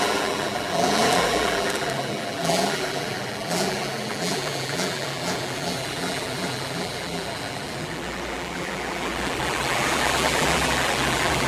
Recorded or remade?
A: remade